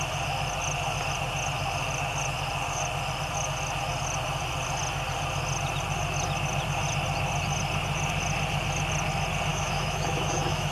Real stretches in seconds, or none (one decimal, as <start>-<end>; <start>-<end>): 0.0-9.5